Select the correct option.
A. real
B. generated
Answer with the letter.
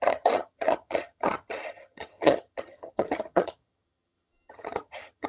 B